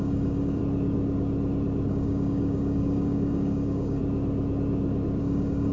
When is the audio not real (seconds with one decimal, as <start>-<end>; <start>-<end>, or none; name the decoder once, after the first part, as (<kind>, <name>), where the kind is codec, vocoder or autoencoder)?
0.0-0.6 (codec, DAC); 1.9-4.0; 5.2-5.7